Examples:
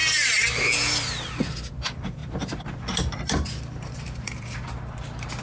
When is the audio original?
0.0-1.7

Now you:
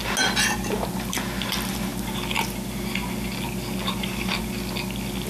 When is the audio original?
0.0-5.3